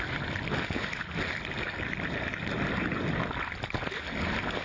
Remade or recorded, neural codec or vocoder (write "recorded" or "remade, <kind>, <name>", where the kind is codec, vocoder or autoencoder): recorded